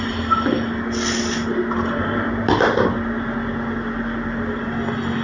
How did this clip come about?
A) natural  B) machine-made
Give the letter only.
A